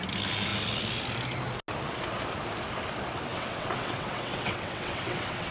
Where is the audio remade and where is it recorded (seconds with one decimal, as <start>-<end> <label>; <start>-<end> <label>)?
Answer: 0.0-3.3 recorded; 3.3-5.5 remade